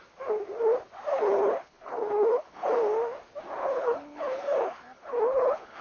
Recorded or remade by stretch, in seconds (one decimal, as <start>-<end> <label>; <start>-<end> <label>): 0.0-1.1 recorded; 1.1-2.8 remade; 2.8-3.6 recorded; 3.6-5.8 remade